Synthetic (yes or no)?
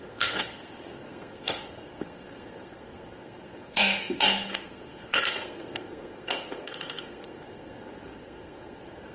yes